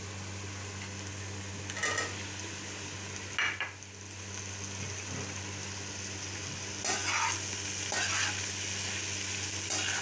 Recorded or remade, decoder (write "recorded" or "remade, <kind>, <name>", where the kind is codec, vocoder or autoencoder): recorded